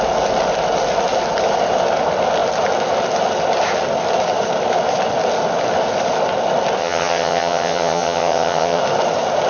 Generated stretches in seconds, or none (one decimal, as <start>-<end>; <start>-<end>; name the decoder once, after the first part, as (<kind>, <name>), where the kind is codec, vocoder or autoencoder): 6.8-8.8 (vocoder, HiFi-GAN)